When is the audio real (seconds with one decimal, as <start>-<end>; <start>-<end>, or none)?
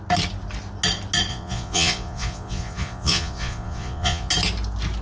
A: 0.0-1.3; 4.3-5.0